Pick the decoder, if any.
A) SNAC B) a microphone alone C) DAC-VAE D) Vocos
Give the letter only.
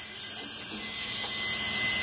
B